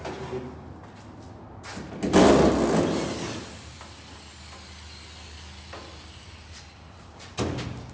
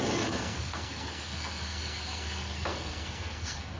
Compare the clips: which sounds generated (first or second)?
second